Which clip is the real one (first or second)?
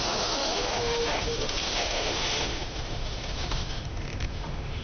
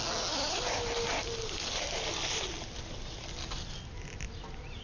second